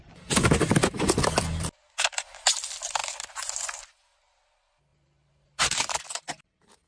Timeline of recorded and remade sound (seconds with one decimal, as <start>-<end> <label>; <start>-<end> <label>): 0.0-4.9 recorded; 4.9-6.0 remade; 6.0-6.9 recorded